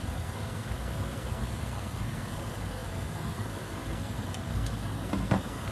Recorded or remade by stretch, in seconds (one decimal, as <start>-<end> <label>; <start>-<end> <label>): 0.0-5.7 remade